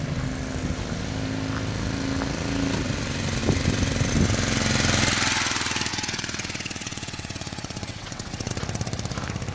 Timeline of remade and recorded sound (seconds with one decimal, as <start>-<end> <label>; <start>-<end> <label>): 0.0-5.9 recorded; 5.9-8.5 remade; 8.5-9.5 recorded